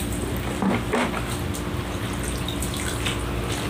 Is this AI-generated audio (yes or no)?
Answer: no